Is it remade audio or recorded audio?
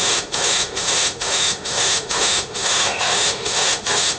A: remade